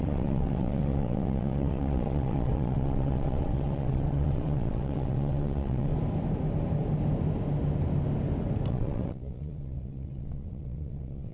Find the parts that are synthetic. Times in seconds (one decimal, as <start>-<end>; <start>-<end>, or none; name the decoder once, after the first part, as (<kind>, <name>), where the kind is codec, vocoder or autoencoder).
0.0-5.9 (vocoder, WaveNeXt); 8.7-11.3